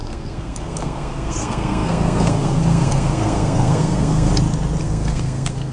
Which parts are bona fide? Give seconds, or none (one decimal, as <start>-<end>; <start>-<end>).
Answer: 4.3-4.8